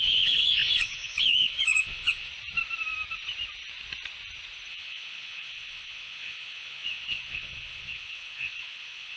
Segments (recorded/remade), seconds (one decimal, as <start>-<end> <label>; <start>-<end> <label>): 0.0-2.3 remade; 2.3-4.7 recorded; 4.7-9.2 remade